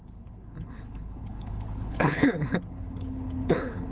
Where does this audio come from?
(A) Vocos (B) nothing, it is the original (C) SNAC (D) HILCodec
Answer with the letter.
D